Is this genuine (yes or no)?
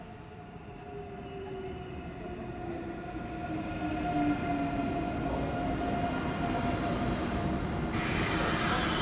yes